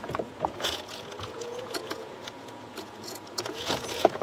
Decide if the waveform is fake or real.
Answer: fake